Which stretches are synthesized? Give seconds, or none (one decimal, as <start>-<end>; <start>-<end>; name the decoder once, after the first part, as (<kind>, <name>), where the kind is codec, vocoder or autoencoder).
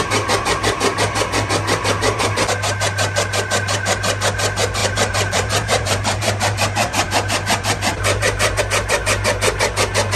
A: 4.8-8.6 (vocoder, BigVGAN v2)